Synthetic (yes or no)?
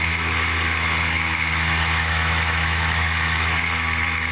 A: yes